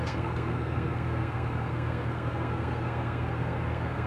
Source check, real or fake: fake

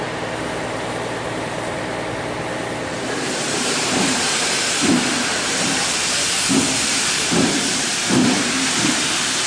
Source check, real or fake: fake